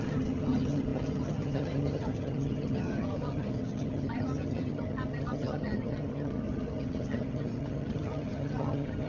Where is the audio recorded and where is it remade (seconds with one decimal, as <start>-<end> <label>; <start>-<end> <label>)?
0.0-9.1 remade